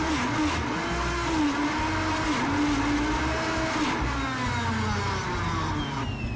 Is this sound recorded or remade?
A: recorded